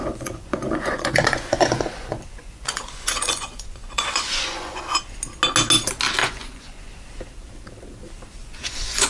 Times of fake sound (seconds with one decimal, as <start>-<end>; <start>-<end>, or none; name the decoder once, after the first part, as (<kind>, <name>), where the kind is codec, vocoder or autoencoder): 0.0-4.8 (vocoder, Vocos); 6.2-7.0; 8.4-9.1